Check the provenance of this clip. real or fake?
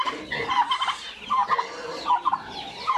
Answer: fake